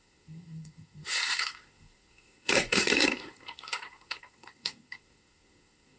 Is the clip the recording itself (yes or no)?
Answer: no